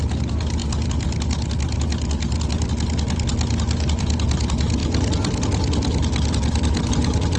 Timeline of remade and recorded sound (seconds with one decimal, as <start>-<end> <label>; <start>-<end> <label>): 0.0-7.4 recorded